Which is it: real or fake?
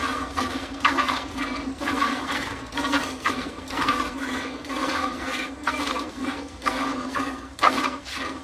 fake